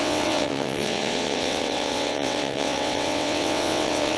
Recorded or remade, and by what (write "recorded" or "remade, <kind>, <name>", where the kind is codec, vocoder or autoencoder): remade, vocoder, WaveNeXt